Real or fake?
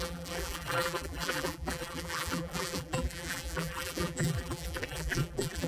fake